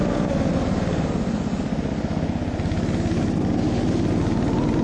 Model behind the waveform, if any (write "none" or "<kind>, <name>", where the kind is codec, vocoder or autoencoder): none